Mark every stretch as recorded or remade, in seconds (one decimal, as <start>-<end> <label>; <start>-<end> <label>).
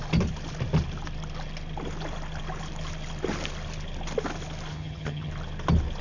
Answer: 0.0-4.7 recorded; 4.7-5.3 remade; 5.3-6.0 recorded